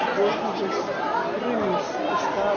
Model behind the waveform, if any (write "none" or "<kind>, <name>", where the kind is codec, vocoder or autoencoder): none